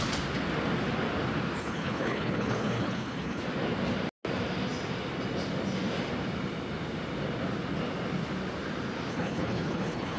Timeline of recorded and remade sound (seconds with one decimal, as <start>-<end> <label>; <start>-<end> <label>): 0.0-1.6 recorded; 1.6-3.4 remade; 3.4-9.1 recorded; 9.1-10.2 remade